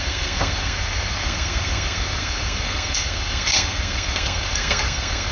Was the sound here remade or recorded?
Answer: remade